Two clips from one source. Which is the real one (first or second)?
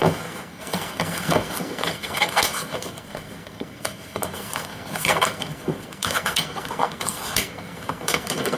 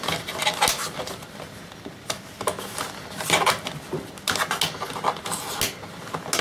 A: second